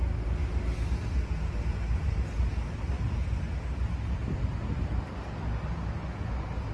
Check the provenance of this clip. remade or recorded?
recorded